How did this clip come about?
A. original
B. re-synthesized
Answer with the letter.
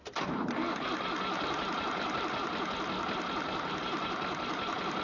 A